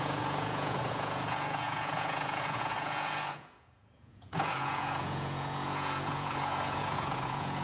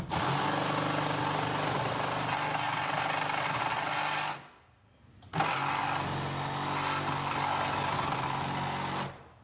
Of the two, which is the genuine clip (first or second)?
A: second